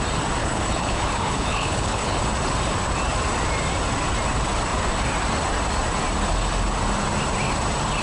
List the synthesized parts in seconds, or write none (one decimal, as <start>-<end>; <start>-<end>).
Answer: 0.4-2.2